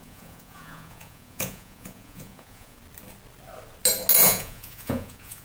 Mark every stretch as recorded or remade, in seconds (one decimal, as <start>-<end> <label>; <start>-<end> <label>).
0.0-2.8 remade; 2.8-4.2 recorded; 4.2-5.4 remade